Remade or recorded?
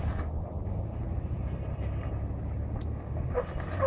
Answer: recorded